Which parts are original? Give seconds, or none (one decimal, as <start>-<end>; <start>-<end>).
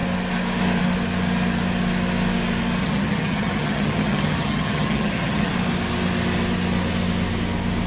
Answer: 0.0-2.8; 5.5-7.9